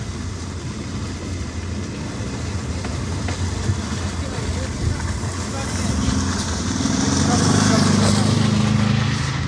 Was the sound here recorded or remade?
recorded